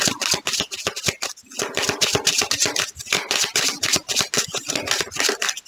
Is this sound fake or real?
real